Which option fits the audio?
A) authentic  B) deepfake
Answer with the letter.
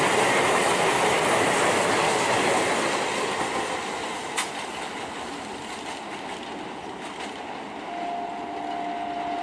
A